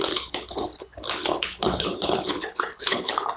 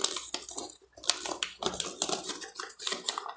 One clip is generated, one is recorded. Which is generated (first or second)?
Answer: first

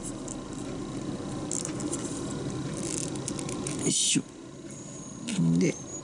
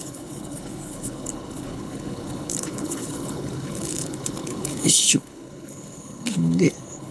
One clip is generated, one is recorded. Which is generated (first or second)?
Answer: second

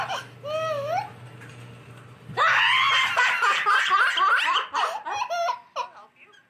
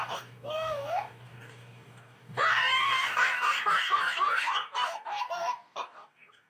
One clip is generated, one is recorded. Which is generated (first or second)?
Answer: second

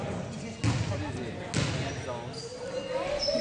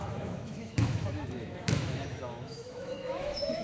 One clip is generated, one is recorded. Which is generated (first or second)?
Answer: second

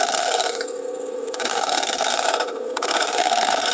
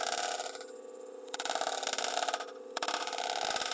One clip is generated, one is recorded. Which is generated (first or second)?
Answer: first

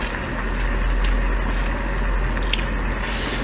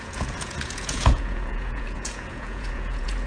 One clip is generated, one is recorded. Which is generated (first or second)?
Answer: second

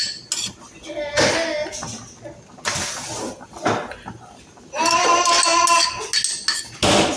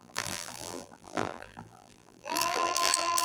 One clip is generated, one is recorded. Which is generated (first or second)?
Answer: second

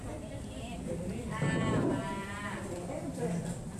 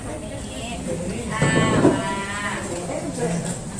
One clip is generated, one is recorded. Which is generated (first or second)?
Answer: first